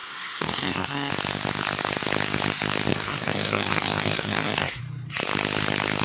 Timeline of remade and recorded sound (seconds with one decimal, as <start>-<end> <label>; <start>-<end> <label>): 0.0-1.1 remade; 1.1-2.9 recorded; 2.9-4.8 remade; 4.8-6.0 recorded